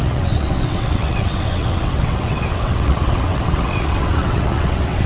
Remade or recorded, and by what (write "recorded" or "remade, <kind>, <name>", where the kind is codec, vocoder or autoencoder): remade, vocoder, WaveNeXt